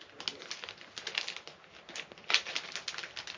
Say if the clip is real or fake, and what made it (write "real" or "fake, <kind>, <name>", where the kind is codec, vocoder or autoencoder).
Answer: real